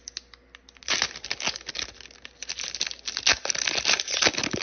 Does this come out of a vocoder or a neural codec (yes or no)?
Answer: no